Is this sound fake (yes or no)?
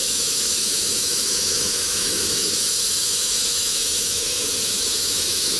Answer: yes